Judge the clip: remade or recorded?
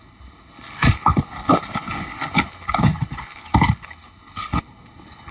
remade